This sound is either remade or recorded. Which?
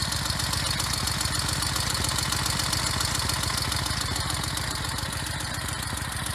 recorded